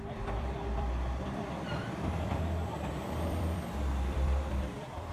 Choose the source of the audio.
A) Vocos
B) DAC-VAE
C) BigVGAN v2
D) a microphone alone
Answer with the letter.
C